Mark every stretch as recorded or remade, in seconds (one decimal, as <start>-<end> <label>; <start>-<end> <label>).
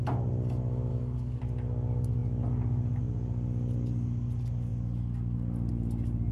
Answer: 0.0-0.9 recorded; 0.9-1.4 remade; 1.4-6.3 recorded